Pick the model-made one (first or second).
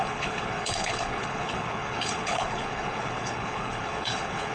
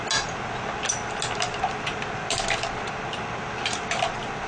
first